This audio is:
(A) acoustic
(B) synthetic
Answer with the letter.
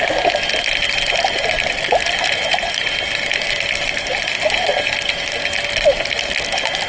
B